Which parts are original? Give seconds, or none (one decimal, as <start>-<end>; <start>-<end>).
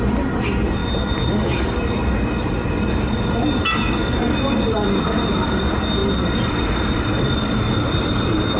0.0-8.6